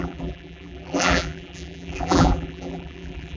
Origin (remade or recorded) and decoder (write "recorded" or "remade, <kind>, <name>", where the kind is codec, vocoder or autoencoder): remade, vocoder, BigVGAN v2